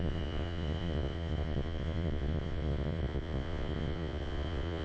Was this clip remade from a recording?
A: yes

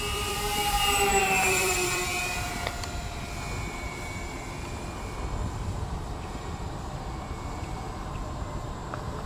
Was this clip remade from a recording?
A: yes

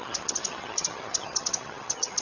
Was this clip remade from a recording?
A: yes